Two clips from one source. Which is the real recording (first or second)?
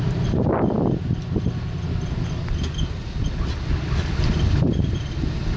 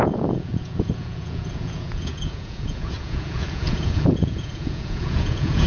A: first